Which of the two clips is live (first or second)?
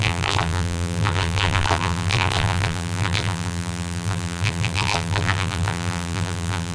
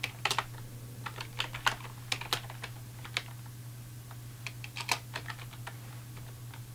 second